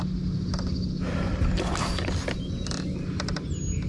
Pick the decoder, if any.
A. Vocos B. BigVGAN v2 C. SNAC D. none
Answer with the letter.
D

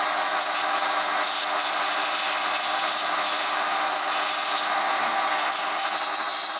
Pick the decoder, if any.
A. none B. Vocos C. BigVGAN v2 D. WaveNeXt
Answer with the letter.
A